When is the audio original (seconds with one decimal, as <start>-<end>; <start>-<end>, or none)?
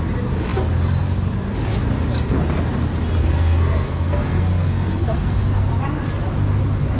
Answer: 0.0-3.2; 5.7-7.0